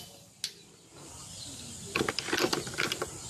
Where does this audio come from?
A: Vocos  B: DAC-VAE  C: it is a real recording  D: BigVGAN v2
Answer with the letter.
C